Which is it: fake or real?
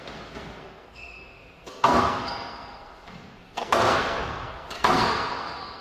fake